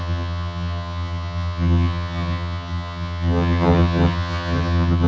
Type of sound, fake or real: fake